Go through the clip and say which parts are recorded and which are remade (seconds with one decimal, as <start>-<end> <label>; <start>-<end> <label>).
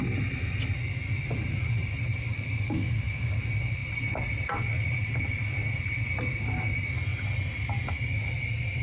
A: 0.0-2.3 recorded; 2.3-3.4 remade; 3.4-8.8 recorded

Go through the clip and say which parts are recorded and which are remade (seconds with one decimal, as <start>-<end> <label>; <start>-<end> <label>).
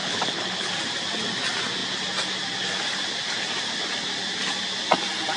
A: 0.0-0.7 remade; 0.7-5.4 recorded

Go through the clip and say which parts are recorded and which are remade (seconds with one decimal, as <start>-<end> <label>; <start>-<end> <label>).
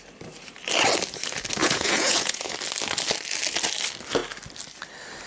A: 0.0-1.6 recorded; 1.6-2.5 remade; 2.5-5.3 recorded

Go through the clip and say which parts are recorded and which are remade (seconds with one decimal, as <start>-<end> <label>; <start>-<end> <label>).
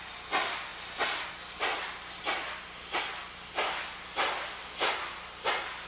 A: 0.0-5.9 recorded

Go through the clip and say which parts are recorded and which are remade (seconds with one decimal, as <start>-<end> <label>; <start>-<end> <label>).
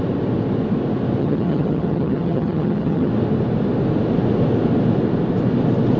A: 0.0-1.2 recorded; 1.2-3.1 remade; 3.1-6.0 recorded